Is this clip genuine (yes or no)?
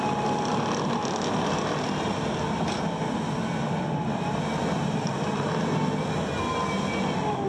yes